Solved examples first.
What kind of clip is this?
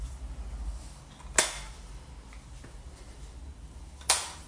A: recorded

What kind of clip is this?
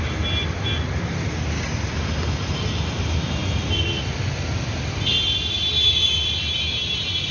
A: recorded